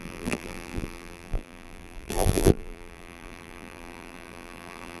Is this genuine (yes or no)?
no